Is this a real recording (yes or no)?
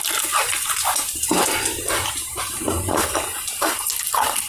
no